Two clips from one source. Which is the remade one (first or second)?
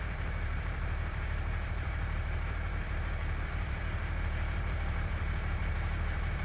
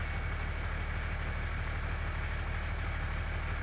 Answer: first